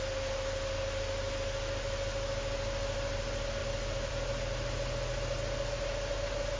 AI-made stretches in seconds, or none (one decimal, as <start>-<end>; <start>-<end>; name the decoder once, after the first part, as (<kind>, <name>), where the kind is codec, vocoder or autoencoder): none